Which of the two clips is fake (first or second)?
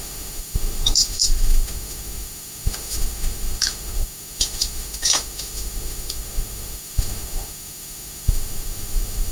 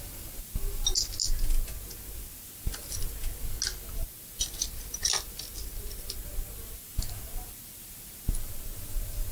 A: first